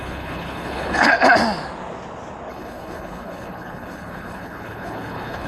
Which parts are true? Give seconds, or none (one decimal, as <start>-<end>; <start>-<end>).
1.1-2.5